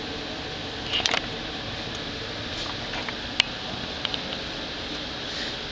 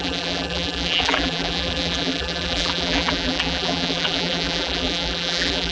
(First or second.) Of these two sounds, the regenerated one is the second